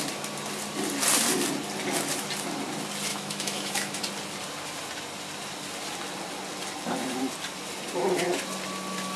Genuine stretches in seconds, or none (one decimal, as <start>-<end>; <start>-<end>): 0.0-3.1; 4.0-9.2

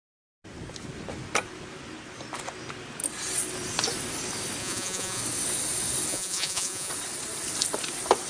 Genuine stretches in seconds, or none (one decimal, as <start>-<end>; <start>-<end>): 0.0-4.6; 5.2-6.1; 6.9-8.3

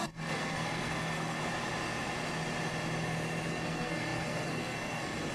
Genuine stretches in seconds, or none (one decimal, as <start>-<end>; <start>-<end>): 1.4-3.5